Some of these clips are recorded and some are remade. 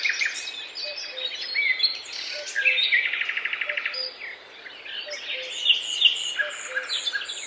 recorded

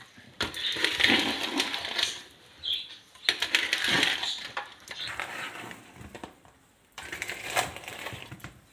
remade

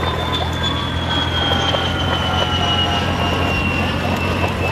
recorded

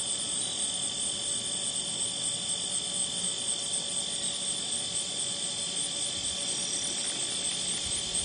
recorded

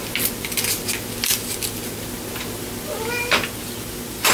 recorded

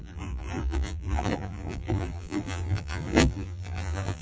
remade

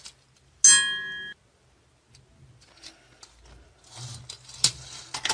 recorded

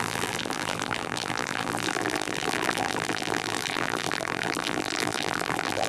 remade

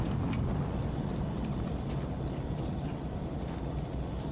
recorded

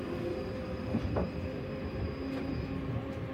recorded